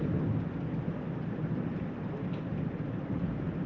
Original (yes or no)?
yes